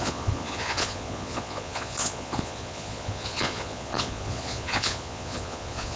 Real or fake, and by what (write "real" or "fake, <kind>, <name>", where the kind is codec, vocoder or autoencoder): fake, vocoder, Vocos